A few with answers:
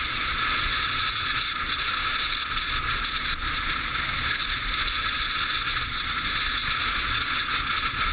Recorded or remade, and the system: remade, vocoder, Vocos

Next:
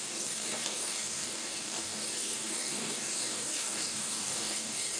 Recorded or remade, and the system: remade, codec, DAC